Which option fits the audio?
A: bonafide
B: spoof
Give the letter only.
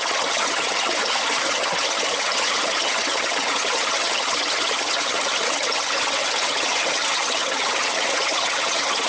B